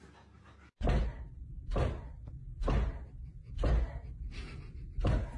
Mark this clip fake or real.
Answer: real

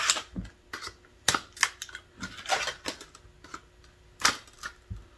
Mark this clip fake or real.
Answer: real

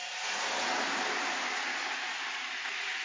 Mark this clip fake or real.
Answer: real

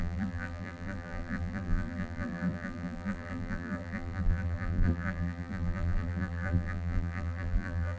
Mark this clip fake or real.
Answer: fake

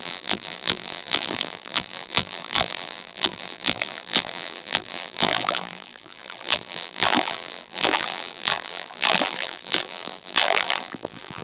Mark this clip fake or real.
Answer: fake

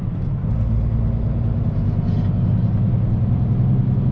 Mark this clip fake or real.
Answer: real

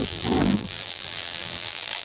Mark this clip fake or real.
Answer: fake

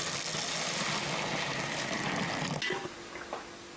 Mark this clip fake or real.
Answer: real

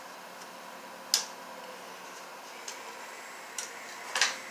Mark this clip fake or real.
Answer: real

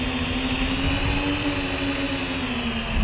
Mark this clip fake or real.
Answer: real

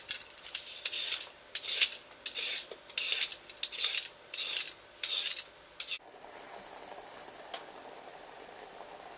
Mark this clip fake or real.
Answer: real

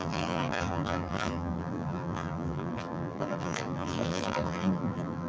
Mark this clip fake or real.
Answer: fake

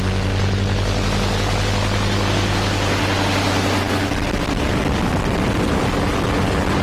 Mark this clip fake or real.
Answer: real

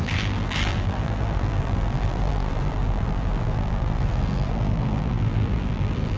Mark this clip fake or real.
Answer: fake